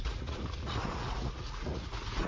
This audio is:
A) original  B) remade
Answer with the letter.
B